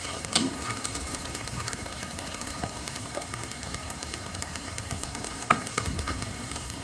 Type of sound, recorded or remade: remade